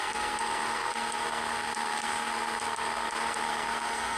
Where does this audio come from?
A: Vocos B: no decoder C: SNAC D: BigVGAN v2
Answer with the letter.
C